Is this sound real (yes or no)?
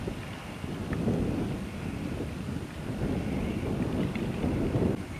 yes